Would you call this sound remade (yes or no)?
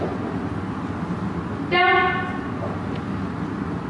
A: no